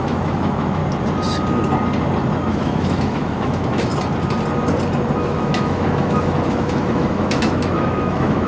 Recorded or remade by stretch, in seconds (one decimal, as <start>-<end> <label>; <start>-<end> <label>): 0.0-0.8 remade; 0.8-2.5 recorded; 2.5-3.9 remade; 3.9-5.2 recorded; 5.2-8.5 remade